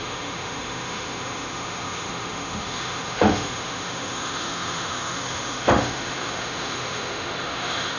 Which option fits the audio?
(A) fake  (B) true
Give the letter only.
A